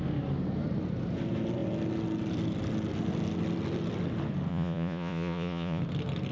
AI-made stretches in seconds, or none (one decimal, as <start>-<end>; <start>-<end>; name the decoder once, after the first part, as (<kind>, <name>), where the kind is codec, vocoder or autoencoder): 4.5-5.8 (vocoder, Vocos)